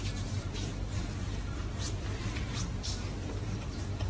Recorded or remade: remade